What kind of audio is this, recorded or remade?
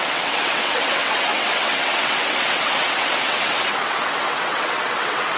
remade